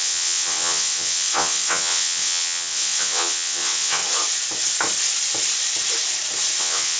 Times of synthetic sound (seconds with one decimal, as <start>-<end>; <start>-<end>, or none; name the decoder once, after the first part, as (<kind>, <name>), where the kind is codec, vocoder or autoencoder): 0.0-4.0 (vocoder, WaveNeXt); 6.6-7.0